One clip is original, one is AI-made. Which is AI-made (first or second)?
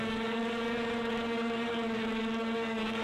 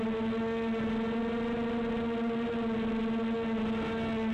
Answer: first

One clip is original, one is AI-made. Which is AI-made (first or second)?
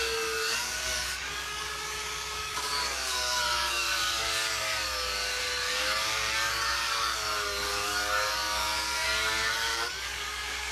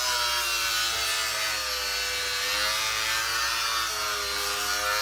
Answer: first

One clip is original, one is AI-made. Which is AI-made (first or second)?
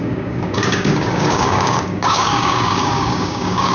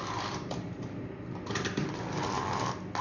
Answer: first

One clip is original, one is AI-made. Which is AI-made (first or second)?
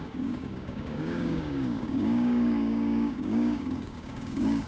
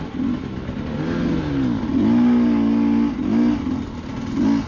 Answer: first